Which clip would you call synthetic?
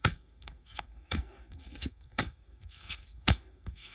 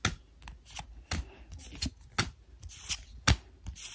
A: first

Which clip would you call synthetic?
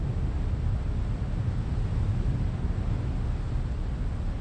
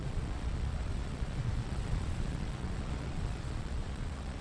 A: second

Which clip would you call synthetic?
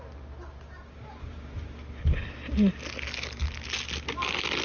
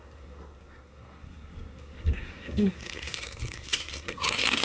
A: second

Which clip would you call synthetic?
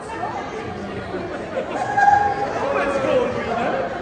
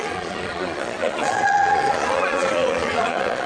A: second